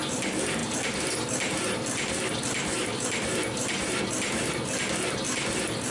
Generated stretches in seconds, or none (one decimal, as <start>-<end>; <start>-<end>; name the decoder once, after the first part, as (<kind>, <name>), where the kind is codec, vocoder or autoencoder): none